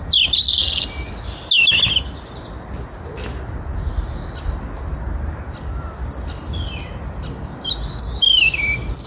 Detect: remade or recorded recorded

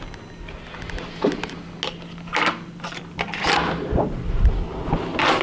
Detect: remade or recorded recorded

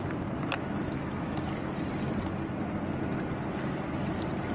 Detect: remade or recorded recorded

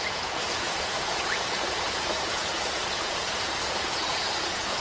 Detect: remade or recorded remade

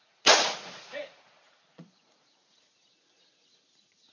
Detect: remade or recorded remade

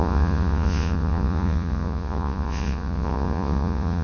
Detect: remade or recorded remade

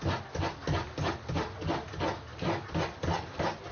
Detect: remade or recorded recorded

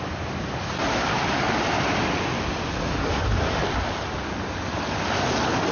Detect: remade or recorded recorded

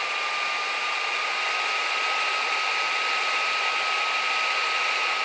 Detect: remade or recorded recorded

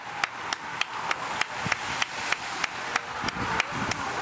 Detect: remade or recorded recorded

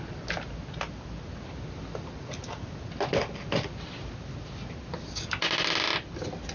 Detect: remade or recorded recorded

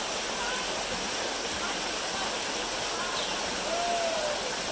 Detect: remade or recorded recorded